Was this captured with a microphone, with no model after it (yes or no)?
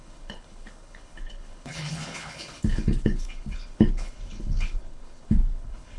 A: no